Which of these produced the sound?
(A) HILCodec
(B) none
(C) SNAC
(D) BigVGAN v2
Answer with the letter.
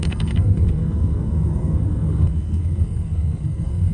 C